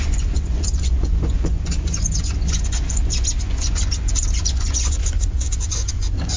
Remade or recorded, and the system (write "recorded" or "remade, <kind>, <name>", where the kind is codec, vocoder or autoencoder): remade, vocoder, Vocos